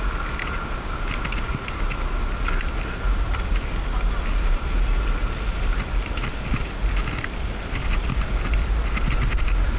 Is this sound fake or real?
real